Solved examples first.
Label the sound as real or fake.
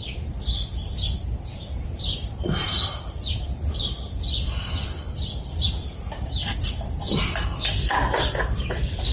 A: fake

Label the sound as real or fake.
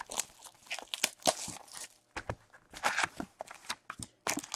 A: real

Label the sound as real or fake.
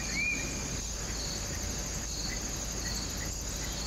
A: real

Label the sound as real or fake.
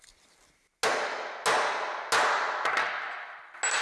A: real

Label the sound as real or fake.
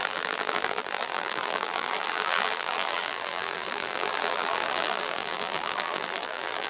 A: fake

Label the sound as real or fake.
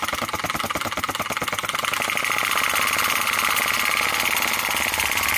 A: real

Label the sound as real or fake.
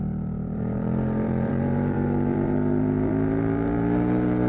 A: fake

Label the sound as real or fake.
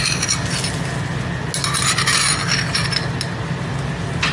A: real